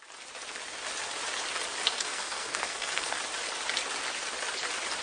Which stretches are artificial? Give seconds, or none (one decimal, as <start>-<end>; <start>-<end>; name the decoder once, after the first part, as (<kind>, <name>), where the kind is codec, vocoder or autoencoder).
1.9-3.2 (codec, SNAC)